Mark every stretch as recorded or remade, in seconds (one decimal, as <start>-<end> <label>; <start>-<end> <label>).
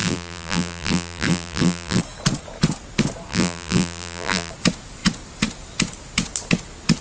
0.0-2.0 remade; 2.0-3.3 recorded; 3.3-4.5 remade; 4.5-7.0 recorded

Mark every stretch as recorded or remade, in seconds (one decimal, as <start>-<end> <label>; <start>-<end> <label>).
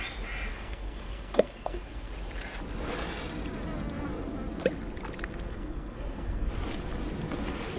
0.0-0.5 recorded; 0.5-2.1 remade; 2.1-5.5 recorded; 5.5-6.5 remade; 6.5-7.8 recorded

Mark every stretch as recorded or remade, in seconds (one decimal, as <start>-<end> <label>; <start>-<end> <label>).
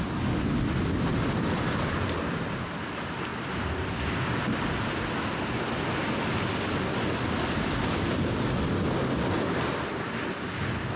0.0-11.0 recorded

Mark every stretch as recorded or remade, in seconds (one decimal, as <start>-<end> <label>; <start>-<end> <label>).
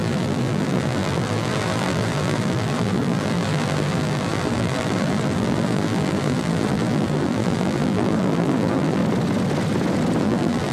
0.0-9.0 remade; 9.0-10.2 recorded; 10.2-10.7 remade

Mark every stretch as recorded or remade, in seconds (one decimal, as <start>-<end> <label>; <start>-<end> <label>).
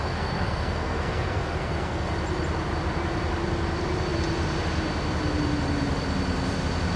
0.0-2.1 remade; 2.1-7.0 recorded